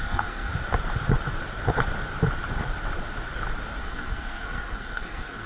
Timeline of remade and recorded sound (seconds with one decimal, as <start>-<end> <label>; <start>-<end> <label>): 0.0-0.5 remade; 0.5-3.8 recorded; 3.8-5.5 remade